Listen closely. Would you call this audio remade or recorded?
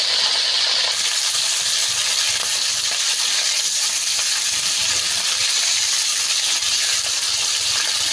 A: recorded